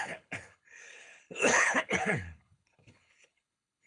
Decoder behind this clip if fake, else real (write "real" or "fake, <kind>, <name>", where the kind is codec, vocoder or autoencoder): fake, codec, HILCodec